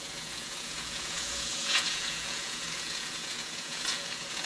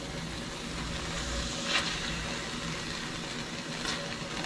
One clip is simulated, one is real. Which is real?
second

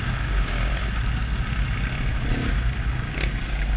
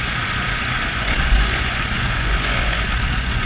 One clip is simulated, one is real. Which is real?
first